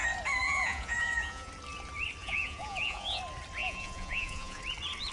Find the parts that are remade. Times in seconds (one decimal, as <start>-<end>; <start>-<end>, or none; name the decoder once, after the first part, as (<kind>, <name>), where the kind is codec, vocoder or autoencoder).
0.4-1.5 (vocoder, Vocos); 2.2-3.2; 3.6-4.6